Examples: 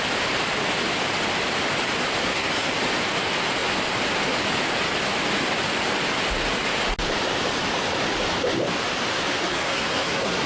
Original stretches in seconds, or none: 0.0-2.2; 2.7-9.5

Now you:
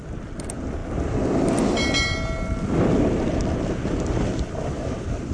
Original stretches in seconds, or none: 0.0-5.3

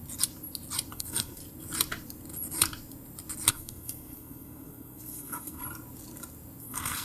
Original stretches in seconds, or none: 0.0-0.9; 1.4-3.5; 5.6-6.6

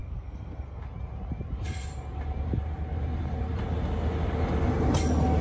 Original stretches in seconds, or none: 0.8-5.4

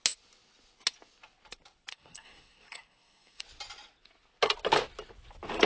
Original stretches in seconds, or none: 0.0-1.9; 3.4-5.7

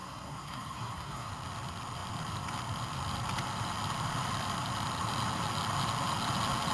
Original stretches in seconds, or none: 1.3-6.7